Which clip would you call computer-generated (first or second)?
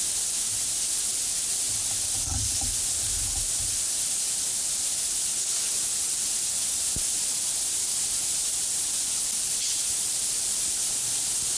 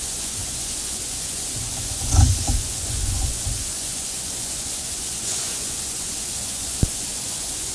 second